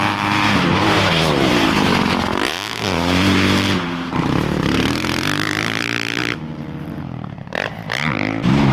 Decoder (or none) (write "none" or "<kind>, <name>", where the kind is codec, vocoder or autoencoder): vocoder, BigVGAN v2